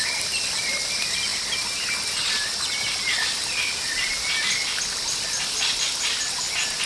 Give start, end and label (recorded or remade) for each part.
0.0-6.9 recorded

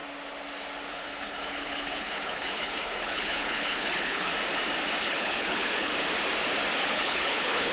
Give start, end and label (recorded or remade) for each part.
0.0-0.9 recorded; 0.9-4.3 remade; 4.3-5.0 recorded; 5.0-5.9 remade; 5.9-6.8 recorded; 6.8-7.7 remade